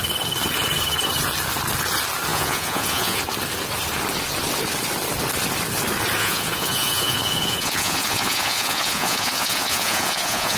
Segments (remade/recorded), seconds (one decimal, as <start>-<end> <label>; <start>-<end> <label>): 0.0-2.3 recorded; 2.3-3.2 remade; 3.2-6.2 recorded; 6.2-10.6 remade